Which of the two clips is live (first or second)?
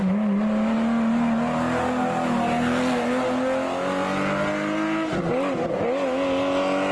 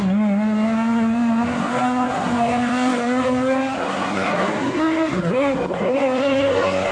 first